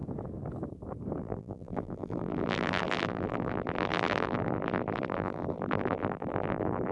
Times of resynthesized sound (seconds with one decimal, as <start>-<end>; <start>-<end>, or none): 1.2-6.9